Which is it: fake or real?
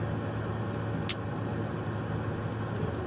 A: real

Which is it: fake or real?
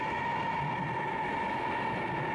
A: real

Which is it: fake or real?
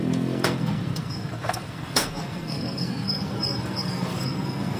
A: fake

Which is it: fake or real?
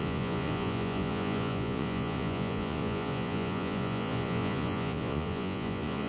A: fake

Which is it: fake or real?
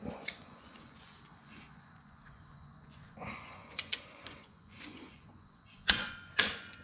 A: fake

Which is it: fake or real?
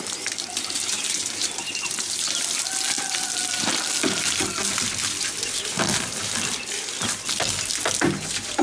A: real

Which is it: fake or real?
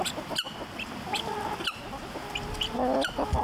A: real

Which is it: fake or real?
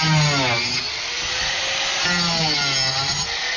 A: real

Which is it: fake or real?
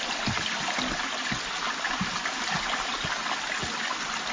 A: real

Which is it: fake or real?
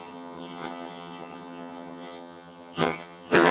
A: fake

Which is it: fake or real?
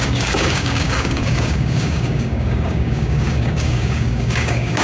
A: fake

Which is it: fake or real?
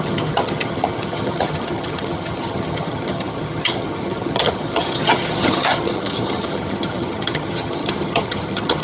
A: fake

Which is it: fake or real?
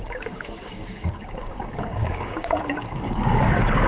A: fake